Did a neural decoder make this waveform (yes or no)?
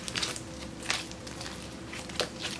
no